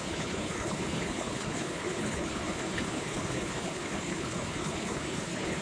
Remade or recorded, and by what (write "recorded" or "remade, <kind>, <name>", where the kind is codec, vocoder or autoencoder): remade, codec, HILCodec